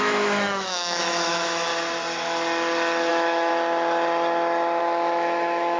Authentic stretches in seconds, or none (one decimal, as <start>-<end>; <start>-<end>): 1.7-3.1; 3.5-4.8